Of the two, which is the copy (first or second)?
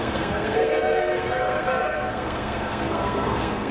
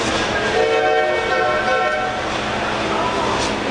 first